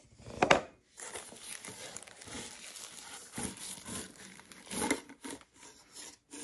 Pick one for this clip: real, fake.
real